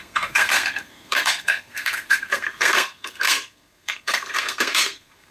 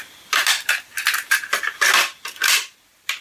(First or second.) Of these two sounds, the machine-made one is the first